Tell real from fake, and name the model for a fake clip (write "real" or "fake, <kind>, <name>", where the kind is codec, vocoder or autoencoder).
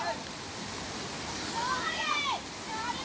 real